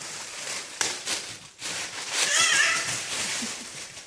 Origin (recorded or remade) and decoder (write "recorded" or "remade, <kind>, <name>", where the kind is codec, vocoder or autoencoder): remade, vocoder, BigVGAN v2